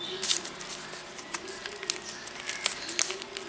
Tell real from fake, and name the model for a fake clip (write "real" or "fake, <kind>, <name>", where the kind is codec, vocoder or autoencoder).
real